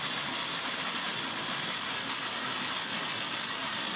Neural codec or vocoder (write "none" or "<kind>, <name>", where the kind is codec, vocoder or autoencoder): none